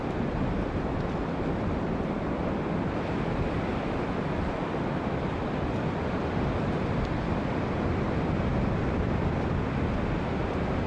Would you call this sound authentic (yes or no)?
yes